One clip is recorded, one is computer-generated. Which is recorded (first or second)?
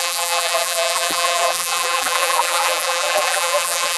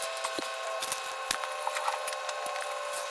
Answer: second